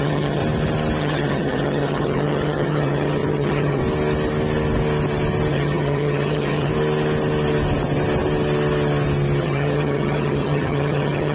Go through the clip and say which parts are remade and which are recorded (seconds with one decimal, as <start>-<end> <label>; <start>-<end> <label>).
0.0-0.4 remade; 0.4-1.0 recorded; 1.0-3.8 remade; 3.8-5.5 recorded; 5.5-6.7 remade; 6.7-9.4 recorded; 9.4-11.3 remade

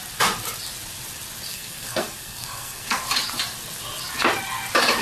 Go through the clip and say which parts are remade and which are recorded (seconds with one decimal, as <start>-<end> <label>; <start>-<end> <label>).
0.0-1.5 recorded; 1.5-3.0 remade; 3.0-5.0 recorded

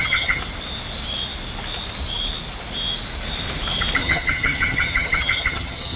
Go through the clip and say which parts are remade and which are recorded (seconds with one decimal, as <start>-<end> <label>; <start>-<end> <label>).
0.0-0.4 remade; 0.4-4.0 recorded; 4.0-6.0 remade

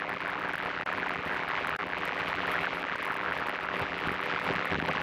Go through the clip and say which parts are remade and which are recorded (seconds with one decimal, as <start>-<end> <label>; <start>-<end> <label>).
0.0-5.0 remade

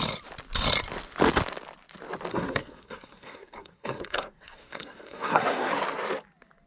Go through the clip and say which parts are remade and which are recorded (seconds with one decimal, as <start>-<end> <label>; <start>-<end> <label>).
0.0-2.3 recorded; 2.3-5.7 remade; 5.7-6.7 recorded